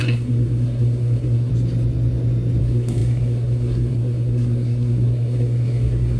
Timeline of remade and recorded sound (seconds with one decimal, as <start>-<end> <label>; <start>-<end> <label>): 0.0-1.5 remade; 1.5-2.6 recorded; 2.6-6.2 remade